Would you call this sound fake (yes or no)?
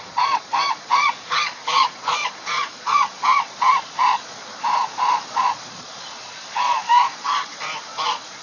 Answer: yes